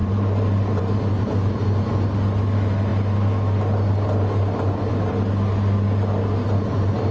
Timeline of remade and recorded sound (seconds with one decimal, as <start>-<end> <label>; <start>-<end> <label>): 0.0-0.8 remade; 0.8-7.1 recorded